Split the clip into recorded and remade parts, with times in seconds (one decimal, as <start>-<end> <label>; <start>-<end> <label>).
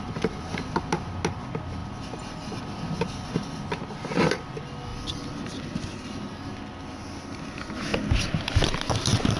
0.0-1.8 recorded; 1.8-2.6 remade; 2.6-4.9 recorded; 4.9-6.3 remade; 6.3-9.4 recorded